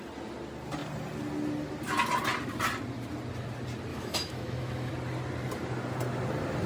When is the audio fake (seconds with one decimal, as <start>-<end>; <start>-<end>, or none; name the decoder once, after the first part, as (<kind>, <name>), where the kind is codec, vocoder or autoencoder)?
3.9-4.9 (autoencoder, DAC-VAE)